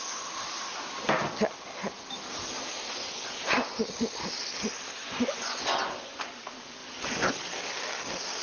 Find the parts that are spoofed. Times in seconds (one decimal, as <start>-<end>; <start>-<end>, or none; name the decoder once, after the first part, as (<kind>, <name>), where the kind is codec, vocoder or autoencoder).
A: 3.0-3.8 (vocoder, Vocos); 5.0-6.3